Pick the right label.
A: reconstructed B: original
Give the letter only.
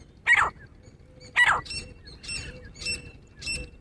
B